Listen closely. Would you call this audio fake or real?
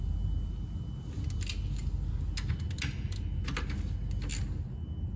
real